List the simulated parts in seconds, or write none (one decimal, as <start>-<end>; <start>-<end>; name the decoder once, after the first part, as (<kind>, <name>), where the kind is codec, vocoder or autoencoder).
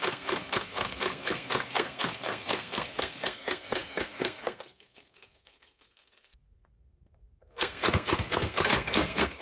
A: 0.0-9.4 (codec, SNAC)